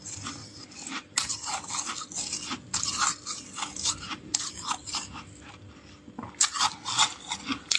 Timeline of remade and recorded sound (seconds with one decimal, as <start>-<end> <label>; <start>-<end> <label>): 0.0-0.4 recorded; 0.4-1.7 remade; 1.7-7.8 recorded